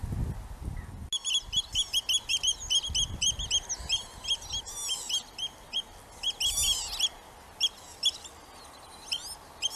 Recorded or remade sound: recorded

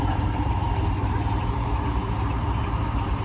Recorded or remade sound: remade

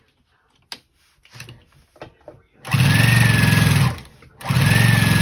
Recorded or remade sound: recorded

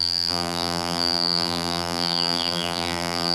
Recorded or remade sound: remade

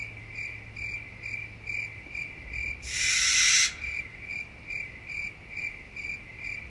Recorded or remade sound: recorded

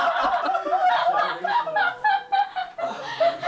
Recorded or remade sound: remade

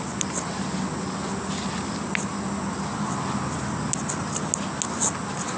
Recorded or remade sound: recorded